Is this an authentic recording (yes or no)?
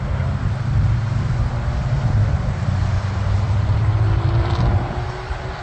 no